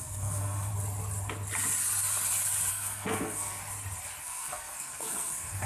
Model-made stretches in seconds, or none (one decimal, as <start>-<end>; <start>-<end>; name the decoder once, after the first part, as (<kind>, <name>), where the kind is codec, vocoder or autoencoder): 0.0-0.7 (codec, SNAC); 2.7-3.6; 4.2-5.7